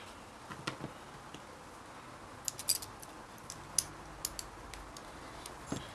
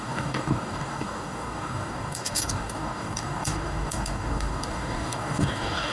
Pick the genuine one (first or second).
first